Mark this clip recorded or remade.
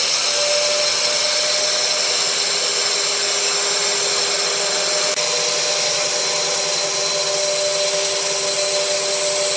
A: recorded